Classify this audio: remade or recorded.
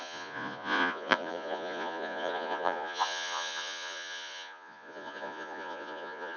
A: remade